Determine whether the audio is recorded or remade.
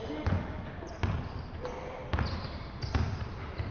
recorded